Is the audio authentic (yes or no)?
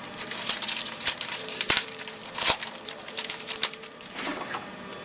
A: no